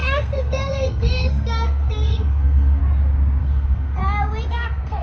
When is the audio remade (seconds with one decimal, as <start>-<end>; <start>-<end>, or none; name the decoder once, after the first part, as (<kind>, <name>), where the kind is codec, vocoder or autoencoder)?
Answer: 0.0-2.8 (codec, SNAC); 3.4-4.0; 4.5-5.0